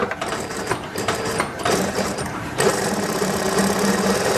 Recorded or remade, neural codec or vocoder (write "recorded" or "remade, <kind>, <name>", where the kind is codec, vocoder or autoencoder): remade, vocoder, BigVGAN v2